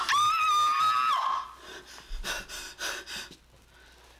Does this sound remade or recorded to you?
recorded